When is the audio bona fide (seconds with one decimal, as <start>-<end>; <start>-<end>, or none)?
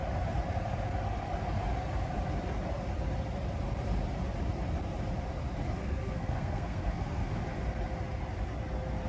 0.0-5.8; 7.4-9.1